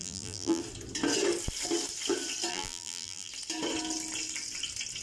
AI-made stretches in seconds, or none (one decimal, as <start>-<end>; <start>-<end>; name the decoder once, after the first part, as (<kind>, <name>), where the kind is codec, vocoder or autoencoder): 0.0-0.6 (vocoder, BigVGAN v2); 2.5-3.3

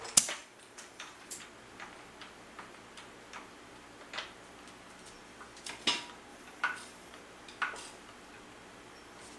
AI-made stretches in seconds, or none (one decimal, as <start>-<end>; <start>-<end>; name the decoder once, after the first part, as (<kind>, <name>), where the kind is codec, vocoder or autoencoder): 0.4-1.4 (vocoder, BigVGAN v2); 6.3-7.2

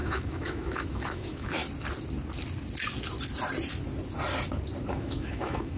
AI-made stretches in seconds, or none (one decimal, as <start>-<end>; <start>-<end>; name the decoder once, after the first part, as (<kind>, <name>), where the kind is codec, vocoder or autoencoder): 0.0-1.6 (autoencoder, DAC-VAE); 4.9-5.8

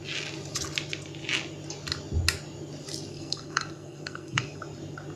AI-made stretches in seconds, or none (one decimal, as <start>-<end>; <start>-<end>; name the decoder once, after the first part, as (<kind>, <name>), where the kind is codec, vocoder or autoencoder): 3.1-4.6 (codec, SNAC)